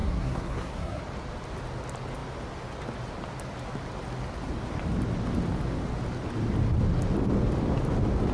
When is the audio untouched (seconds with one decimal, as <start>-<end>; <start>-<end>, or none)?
1.0-8.3